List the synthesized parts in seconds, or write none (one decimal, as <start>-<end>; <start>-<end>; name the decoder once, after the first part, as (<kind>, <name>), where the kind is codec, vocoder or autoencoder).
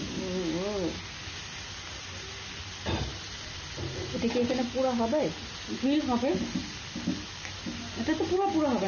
none